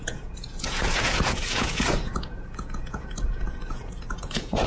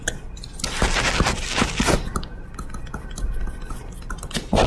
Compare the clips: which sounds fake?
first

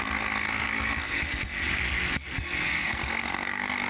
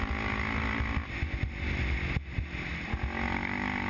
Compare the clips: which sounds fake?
first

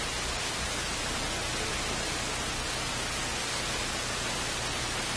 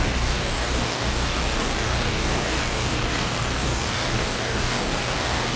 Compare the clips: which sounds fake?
second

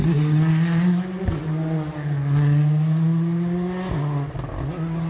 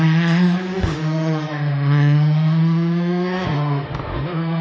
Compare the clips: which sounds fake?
second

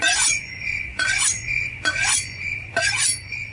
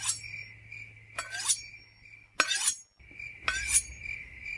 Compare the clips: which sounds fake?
first